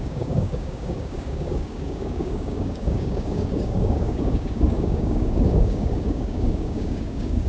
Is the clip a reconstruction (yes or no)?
yes